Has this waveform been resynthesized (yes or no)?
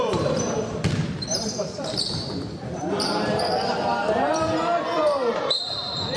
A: yes